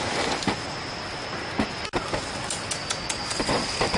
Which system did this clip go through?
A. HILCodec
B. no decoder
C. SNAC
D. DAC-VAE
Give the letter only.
B